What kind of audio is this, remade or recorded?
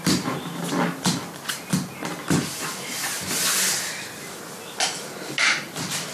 recorded